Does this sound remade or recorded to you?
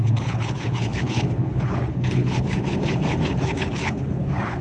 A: remade